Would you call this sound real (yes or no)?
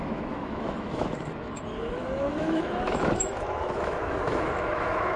no